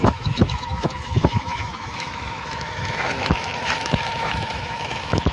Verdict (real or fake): fake